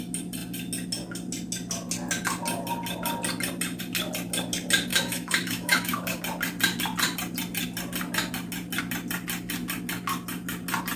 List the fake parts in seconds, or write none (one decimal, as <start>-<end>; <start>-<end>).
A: 4.9-6.2